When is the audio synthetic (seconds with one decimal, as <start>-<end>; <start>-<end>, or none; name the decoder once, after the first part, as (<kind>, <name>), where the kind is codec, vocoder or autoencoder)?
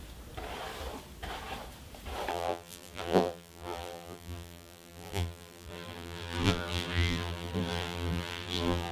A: 2.3-8.9 (vocoder, BigVGAN v2)